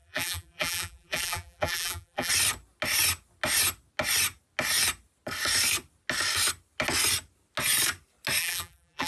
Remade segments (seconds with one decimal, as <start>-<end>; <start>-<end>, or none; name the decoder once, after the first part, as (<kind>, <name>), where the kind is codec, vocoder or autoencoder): 0.0-2.3 (vocoder, BigVGAN v2); 8.4-9.1